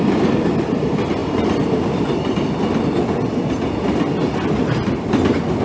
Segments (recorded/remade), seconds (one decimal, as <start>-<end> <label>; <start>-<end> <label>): 0.0-5.6 recorded